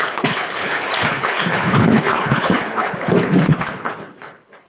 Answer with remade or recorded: remade